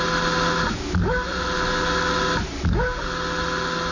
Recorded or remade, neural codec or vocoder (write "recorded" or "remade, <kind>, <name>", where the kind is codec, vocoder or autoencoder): recorded